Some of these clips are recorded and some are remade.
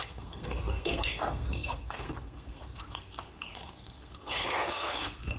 remade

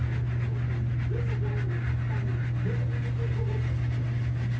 recorded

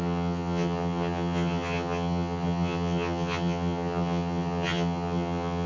remade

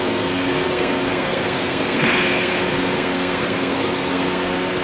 remade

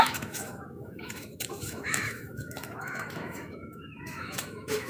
remade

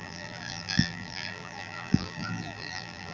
remade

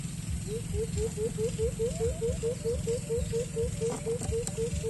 recorded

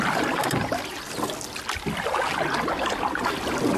recorded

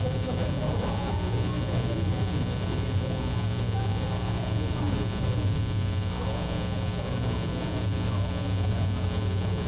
recorded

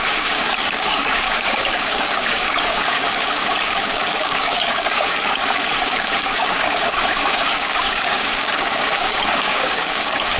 remade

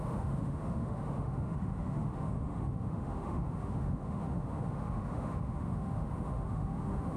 remade